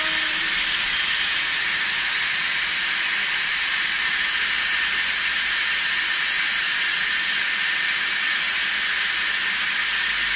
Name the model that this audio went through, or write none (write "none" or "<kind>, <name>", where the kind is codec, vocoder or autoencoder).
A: none